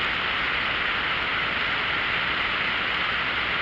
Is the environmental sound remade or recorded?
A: recorded